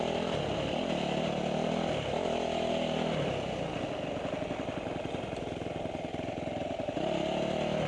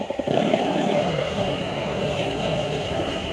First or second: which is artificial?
second